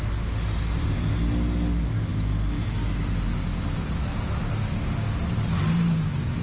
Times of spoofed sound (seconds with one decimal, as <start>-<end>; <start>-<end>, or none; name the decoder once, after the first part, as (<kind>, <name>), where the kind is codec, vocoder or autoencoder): none